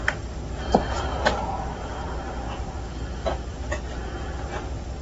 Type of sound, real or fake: real